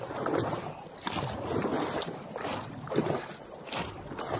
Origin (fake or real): real